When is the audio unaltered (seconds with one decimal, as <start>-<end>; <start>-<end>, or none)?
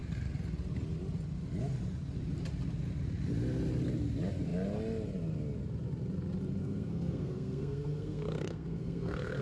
0.0-6.6